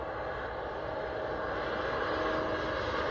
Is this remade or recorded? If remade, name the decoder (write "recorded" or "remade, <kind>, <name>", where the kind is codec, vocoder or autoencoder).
recorded